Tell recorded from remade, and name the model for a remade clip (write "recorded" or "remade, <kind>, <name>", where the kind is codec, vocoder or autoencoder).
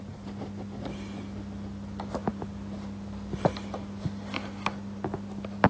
recorded